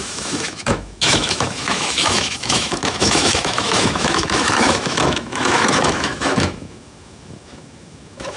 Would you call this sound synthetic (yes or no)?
yes